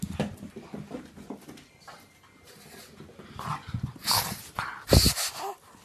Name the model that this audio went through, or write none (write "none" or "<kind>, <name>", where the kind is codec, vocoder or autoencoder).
none